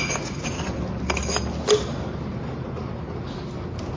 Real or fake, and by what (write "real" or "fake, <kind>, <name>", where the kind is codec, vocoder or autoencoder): real